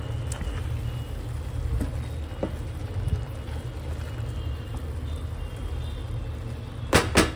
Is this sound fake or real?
real